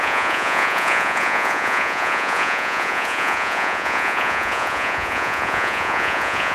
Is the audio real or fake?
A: fake